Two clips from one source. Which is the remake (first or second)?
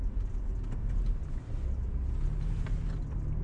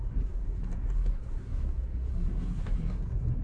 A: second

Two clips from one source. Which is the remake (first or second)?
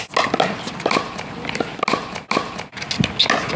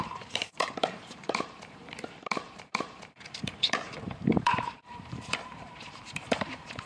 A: second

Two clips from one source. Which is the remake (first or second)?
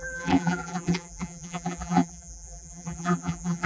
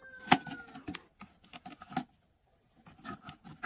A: first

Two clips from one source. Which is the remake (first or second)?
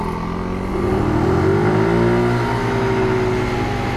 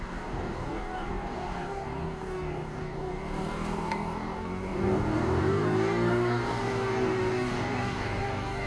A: second